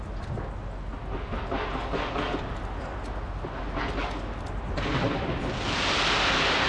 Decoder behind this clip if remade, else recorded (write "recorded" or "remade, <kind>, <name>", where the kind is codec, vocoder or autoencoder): recorded